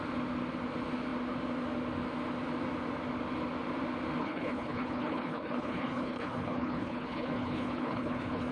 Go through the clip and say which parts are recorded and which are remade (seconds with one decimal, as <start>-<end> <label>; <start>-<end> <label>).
0.0-4.2 recorded; 4.2-8.5 remade